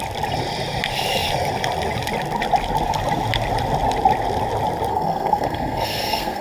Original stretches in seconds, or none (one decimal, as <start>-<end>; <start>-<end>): 0.0-4.9